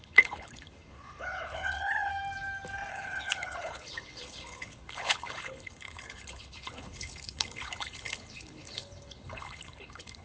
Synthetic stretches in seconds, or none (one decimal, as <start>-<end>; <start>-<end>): 0.0-2.1; 2.9-10.2